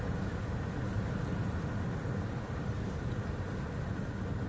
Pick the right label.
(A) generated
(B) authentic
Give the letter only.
B